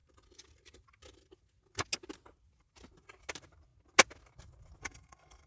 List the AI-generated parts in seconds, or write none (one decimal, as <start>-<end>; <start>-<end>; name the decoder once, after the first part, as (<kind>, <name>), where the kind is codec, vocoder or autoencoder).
4.8-5.5 (codec, SNAC)